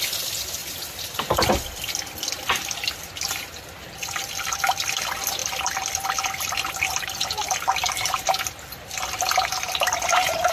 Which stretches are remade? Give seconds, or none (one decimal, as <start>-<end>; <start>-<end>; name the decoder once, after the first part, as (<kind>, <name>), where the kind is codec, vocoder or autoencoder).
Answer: none

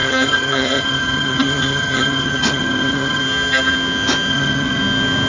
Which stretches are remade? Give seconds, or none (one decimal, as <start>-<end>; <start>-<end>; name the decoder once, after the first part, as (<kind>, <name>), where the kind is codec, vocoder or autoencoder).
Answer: 0.0-3.2 (vocoder, HiFi-GAN); 4.3-4.8

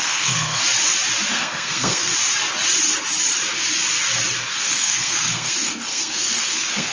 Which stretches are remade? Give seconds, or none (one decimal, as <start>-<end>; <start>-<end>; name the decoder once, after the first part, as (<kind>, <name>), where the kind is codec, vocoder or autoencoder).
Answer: 0.0-0.6 (codec, SNAC); 1.3-2.1; 4.5-6.9